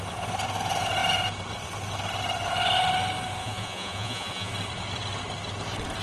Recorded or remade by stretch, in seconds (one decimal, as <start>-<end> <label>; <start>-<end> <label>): 0.0-3.4 recorded; 3.4-4.5 remade; 4.5-6.0 recorded